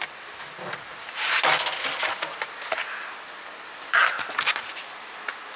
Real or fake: real